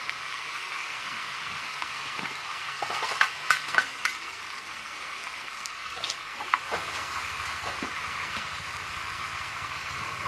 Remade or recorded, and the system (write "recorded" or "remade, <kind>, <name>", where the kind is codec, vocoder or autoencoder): remade, codec, SNAC